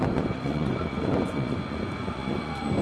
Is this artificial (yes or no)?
yes